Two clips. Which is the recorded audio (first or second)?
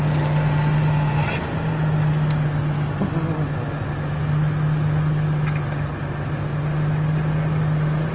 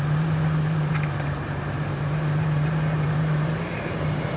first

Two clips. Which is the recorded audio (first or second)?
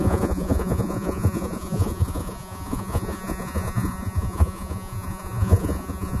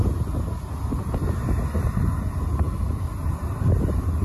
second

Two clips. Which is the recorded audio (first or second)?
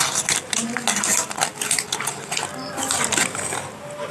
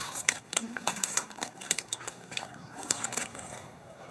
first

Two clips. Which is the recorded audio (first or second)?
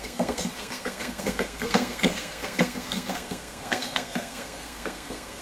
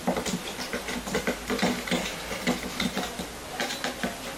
second